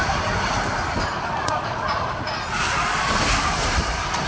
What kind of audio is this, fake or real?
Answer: real